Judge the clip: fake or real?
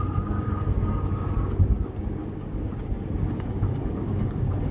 fake